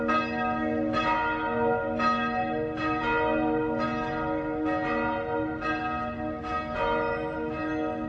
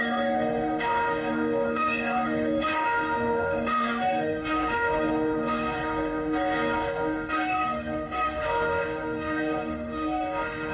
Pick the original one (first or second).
first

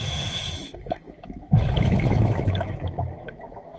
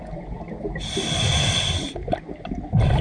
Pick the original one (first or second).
second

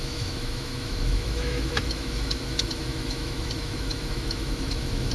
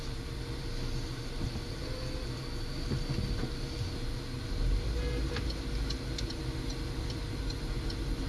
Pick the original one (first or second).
second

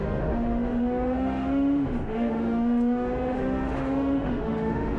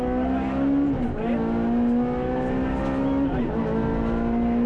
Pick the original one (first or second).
second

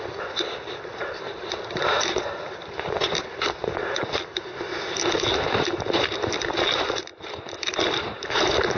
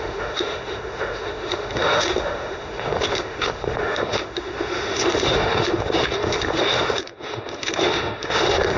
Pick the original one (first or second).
first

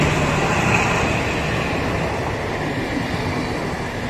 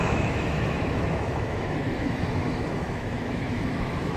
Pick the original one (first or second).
first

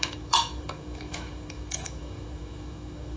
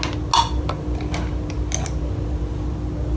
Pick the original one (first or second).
second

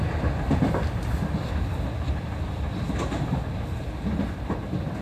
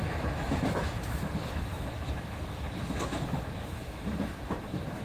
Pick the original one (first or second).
first